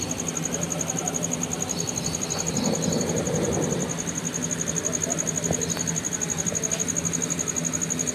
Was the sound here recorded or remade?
recorded